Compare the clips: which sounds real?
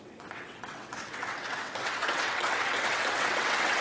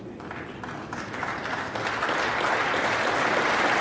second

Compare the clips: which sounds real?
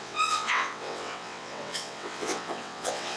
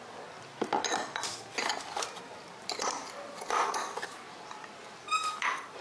second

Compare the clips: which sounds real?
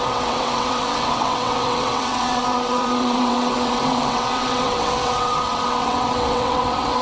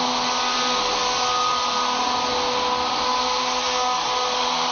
second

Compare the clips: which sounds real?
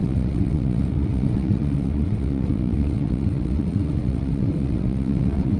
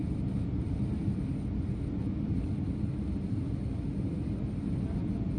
second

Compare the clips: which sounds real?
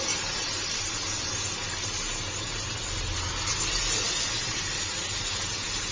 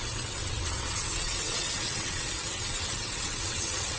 first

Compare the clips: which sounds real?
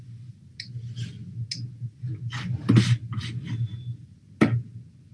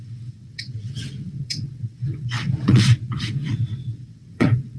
first